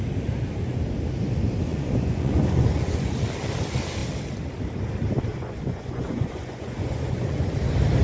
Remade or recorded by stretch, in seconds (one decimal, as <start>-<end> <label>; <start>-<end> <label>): 0.0-1.7 recorded; 1.7-3.1 remade; 3.1-5.3 recorded; 5.3-7.5 remade; 7.5-8.0 recorded